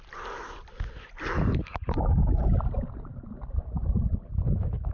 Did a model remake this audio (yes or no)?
no